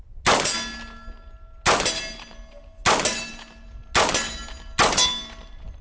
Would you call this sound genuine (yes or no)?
yes